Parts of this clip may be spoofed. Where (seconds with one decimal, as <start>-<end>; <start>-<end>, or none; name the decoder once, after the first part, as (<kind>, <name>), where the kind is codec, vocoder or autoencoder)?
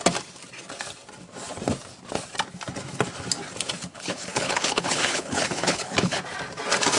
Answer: 3.9-6.2 (codec, HILCodec)